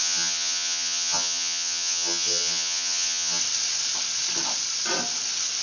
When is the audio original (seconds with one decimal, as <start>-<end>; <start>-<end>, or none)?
3.4-5.6